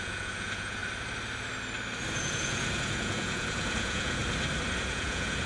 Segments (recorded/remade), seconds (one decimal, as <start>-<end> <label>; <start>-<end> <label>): 0.0-0.8 remade; 0.8-2.1 recorded; 2.1-4.2 remade; 4.2-4.8 recorded; 4.8-5.5 remade

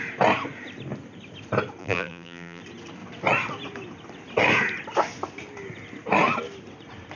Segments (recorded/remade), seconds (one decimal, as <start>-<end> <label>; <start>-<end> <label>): 0.0-1.8 recorded; 1.8-2.6 remade; 2.6-7.2 recorded